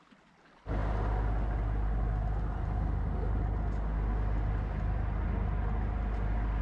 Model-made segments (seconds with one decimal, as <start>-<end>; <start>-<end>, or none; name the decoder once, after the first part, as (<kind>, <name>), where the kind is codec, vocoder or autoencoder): none